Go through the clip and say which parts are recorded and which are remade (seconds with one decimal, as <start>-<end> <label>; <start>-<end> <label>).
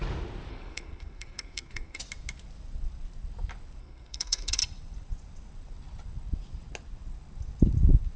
0.0-0.5 recorded; 0.5-2.0 remade; 2.0-3.8 recorded; 3.8-4.6 remade; 4.6-8.2 recorded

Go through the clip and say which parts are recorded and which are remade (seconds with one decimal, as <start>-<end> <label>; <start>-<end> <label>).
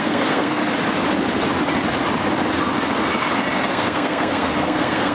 0.0-0.6 remade; 0.6-3.7 recorded; 3.7-5.1 remade